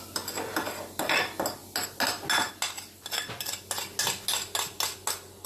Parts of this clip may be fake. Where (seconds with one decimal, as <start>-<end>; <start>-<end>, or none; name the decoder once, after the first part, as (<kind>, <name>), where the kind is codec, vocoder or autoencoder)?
none